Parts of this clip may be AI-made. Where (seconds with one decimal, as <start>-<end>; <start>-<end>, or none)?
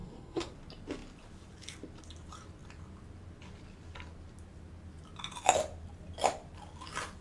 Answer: 0.0-0.5